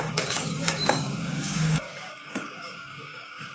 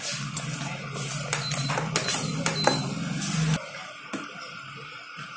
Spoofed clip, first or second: first